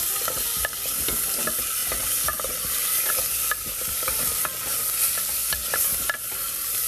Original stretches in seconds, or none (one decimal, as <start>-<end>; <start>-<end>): 0.0-6.9